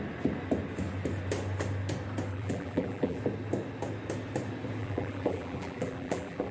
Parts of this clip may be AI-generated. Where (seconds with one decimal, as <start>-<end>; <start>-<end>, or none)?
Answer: 2.3-3.2; 4.8-6.5